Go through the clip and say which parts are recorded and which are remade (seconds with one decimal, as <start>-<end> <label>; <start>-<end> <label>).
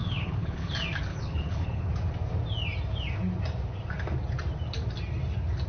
0.0-0.7 remade; 0.7-1.1 recorded; 1.1-1.9 remade; 1.9-5.7 recorded